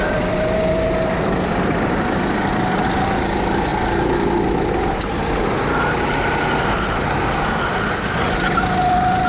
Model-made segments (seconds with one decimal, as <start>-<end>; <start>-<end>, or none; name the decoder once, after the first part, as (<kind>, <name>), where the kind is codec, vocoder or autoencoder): none

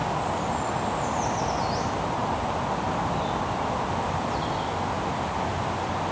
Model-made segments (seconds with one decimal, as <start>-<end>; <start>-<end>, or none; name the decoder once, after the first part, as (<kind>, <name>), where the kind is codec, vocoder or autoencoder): none

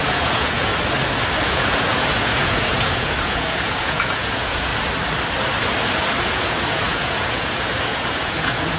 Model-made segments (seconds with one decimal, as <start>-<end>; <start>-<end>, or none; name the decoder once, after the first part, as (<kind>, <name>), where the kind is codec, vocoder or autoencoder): 0.0-0.7 (vocoder, Vocos); 1.4-4.7; 6.2-8.8

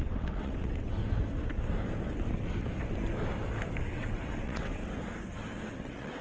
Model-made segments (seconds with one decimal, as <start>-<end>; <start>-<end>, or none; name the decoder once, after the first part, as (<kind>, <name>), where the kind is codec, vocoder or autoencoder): 0.0-1.0 (vocoder, WaveNeXt); 3.8-4.8; 5.7-6.2

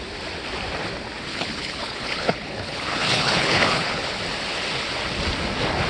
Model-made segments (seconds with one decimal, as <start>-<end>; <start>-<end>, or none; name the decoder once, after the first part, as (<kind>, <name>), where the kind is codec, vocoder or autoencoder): 1.3-4.2 (codec, HILCodec)

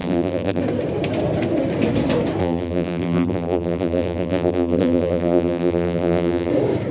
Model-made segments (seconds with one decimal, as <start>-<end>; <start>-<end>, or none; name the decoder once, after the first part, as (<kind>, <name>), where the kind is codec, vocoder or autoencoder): 0.0-0.6 (vocoder, BigVGAN v2); 2.4-6.5

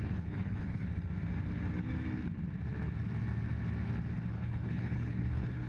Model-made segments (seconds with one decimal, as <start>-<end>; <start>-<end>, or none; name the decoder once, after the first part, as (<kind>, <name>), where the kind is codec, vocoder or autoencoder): 0.0-0.9 (codec, HILCodec); 4.3-5.7

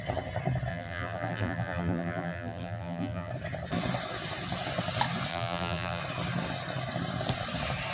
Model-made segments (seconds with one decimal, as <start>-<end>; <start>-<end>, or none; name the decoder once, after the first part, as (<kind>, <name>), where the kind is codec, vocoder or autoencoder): 0.7-3.3 (vocoder, BigVGAN v2); 5.3-6.0